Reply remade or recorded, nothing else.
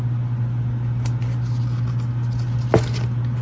recorded